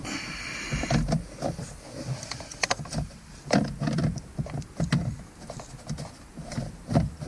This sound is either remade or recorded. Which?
recorded